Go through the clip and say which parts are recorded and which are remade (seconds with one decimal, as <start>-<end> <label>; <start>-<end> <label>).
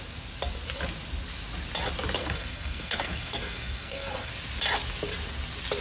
0.0-2.2 recorded; 2.2-4.3 remade; 4.3-5.8 recorded